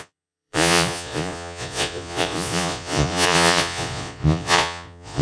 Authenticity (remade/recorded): remade